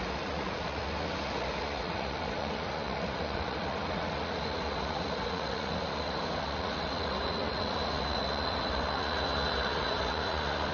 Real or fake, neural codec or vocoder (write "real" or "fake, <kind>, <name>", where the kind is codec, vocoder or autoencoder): fake, vocoder, Vocos